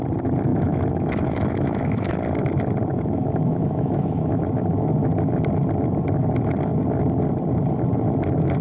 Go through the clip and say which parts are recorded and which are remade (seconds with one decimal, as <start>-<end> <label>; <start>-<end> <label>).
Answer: 0.0-0.5 recorded; 0.5-2.1 remade; 2.1-2.9 recorded; 2.9-4.3 remade; 4.3-8.6 recorded